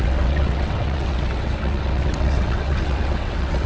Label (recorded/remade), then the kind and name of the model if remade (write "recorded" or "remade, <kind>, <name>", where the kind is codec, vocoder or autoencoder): remade, vocoder, WaveNeXt